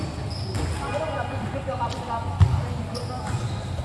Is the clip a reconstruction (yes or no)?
no